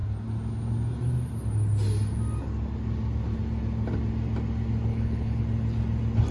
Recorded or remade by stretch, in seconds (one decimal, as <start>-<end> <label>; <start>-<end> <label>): 0.0-4.9 recorded; 4.9-5.4 remade; 5.4-6.3 recorded